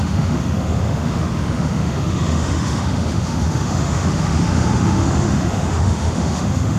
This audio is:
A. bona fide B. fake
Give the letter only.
B